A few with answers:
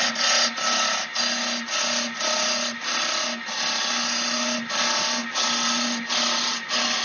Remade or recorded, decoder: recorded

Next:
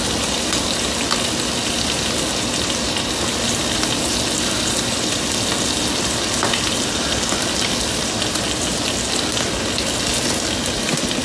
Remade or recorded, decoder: recorded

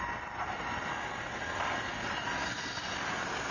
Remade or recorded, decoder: recorded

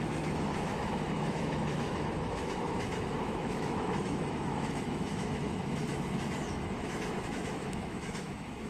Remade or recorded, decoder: remade, autoencoder, DAC-VAE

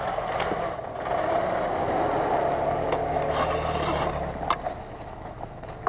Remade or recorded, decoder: recorded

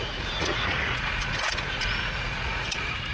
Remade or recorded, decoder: remade, vocoder, Vocos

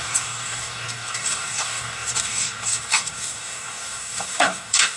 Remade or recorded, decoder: remade, codec, DAC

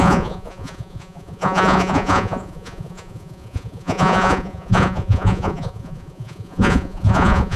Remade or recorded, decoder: remade, vocoder, Vocos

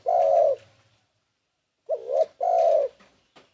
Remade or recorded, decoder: recorded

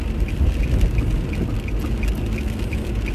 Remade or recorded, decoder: recorded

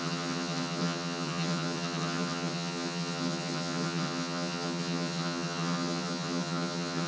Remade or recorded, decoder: remade, vocoder, HiFi-GAN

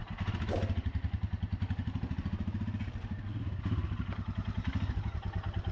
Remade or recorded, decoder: recorded